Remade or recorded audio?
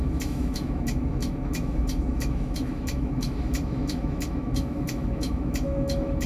remade